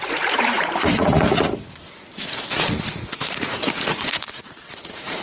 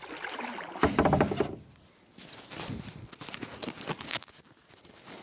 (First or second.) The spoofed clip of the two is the first